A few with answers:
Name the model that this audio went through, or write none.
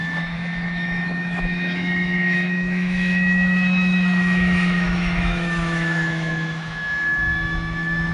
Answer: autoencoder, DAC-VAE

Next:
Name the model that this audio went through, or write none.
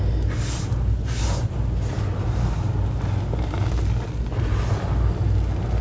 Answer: none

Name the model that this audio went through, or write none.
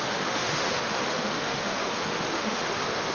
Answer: autoencoder, DAC-VAE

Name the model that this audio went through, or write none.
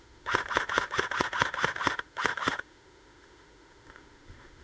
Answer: autoencoder, DAC-VAE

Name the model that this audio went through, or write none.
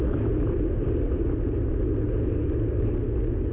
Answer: none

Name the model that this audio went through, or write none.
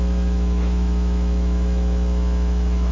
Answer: autoencoder, DAC-VAE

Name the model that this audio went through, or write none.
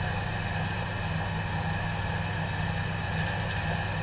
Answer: none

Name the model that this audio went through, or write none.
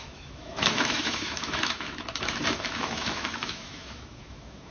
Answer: autoencoder, DAC-VAE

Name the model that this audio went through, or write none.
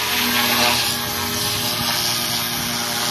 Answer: none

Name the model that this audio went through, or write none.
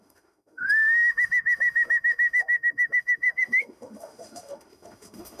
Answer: autoencoder, DAC-VAE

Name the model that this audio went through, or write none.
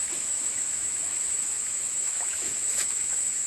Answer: autoencoder, DAC-VAE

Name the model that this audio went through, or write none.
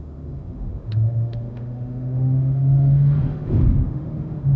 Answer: autoencoder, DAC-VAE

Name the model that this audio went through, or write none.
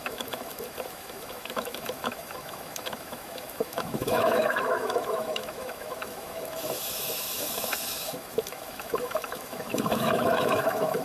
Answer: autoencoder, DAC-VAE